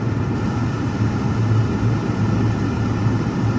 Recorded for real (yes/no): yes